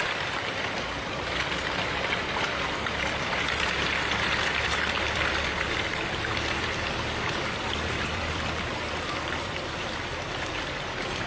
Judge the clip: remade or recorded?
remade